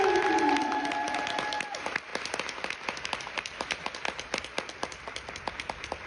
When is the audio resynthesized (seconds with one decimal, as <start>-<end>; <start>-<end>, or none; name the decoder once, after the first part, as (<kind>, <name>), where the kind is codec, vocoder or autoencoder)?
none